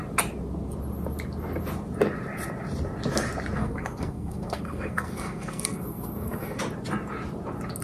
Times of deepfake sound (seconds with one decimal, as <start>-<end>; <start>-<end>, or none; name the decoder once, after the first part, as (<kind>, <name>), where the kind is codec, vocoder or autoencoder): 3.6-6.6 (codec, SNAC)